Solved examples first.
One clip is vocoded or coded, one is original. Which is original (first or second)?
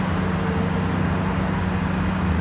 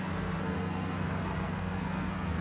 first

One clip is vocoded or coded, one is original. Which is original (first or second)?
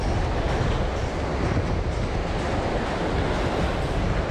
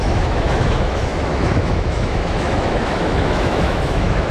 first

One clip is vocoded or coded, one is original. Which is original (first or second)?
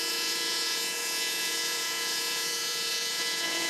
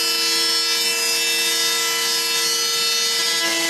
second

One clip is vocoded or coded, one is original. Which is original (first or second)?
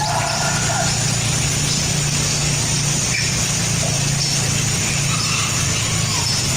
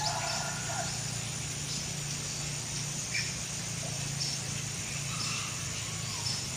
second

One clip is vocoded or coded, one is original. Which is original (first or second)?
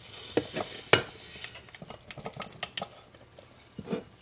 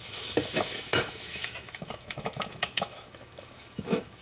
first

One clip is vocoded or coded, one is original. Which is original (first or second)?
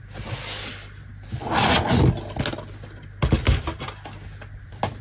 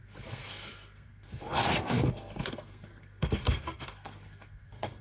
first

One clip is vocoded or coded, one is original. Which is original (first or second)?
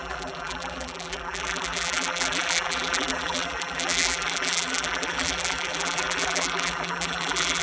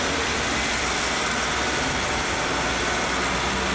second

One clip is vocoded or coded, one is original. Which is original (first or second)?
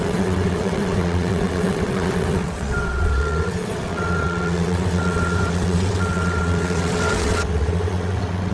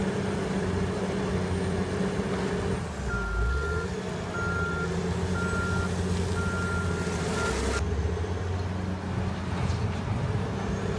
second